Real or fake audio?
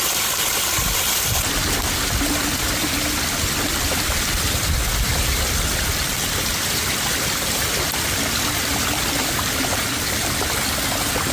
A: real